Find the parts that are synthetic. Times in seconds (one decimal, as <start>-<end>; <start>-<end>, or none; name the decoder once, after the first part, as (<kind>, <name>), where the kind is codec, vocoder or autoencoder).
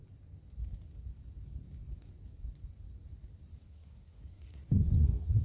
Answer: 3.7-5.4 (codec, SNAC)